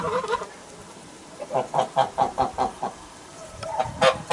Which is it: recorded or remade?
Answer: recorded